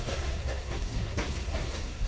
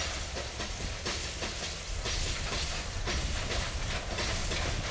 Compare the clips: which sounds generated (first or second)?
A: first